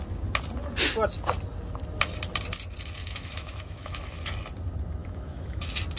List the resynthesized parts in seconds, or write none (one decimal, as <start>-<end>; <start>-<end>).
3.0-4.2; 5.0-5.6